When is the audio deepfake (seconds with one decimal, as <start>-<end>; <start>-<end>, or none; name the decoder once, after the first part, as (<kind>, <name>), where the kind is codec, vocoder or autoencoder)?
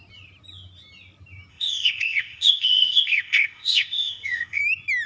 1.5-4.6 (codec, ZipCodec)